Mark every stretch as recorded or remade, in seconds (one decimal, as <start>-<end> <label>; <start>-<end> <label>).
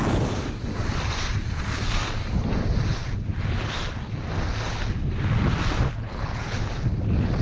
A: 0.0-5.9 recorded; 5.9-6.7 remade; 6.7-7.4 recorded